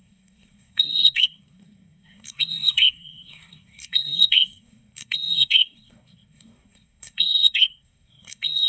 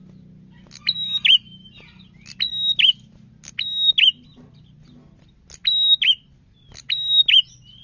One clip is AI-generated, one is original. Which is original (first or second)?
second